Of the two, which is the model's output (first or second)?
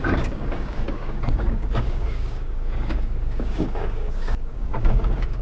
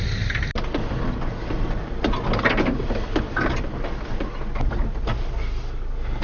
first